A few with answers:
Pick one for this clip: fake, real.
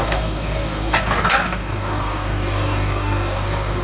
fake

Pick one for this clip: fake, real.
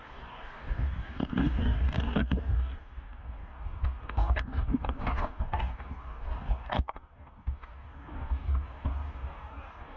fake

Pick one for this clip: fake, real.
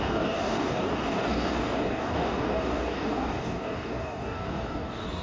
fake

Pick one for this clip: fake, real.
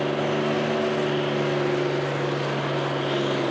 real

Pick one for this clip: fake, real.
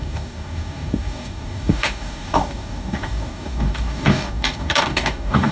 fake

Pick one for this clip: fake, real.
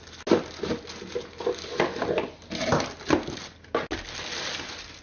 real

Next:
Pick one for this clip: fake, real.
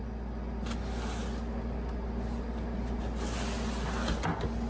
real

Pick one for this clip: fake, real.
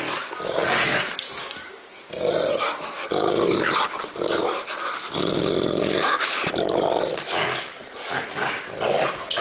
real